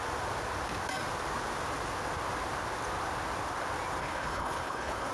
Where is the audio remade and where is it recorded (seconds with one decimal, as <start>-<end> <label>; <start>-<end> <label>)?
0.0-4.0 recorded; 4.0-5.1 remade